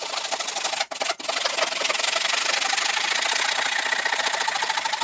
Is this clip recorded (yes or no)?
yes